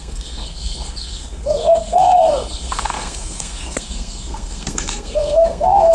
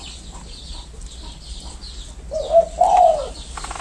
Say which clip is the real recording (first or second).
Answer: second